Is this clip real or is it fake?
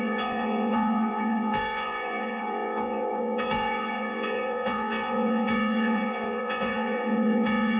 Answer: fake